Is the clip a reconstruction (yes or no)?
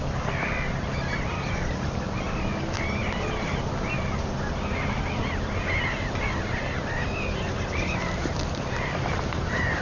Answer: no